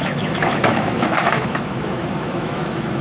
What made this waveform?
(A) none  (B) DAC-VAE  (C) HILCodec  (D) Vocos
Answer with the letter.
B